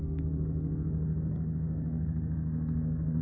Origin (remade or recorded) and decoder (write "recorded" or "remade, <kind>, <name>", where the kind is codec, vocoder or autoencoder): remade, codec, SNAC